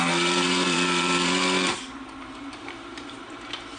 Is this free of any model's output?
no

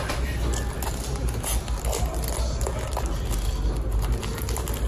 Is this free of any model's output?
yes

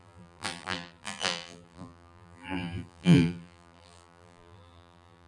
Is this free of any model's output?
no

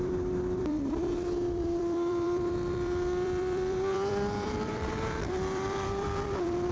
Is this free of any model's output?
no